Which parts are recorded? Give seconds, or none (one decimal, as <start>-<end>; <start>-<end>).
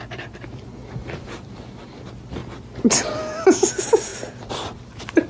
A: 0.0-5.3